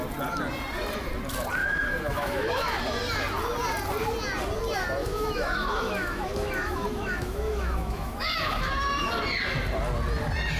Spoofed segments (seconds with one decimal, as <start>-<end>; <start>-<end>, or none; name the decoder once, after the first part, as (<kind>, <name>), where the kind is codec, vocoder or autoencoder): 1.6-2.8 (autoencoder, DAC-VAE); 5.0-9.1